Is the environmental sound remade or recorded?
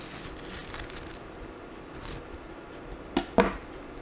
recorded